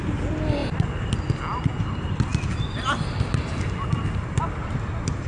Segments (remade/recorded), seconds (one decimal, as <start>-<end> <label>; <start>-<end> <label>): 0.0-5.3 recorded